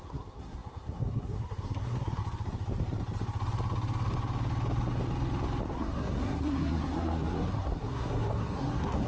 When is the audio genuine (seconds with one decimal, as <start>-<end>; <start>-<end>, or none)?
2.2-5.7